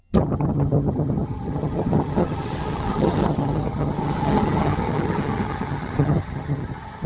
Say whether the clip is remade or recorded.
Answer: remade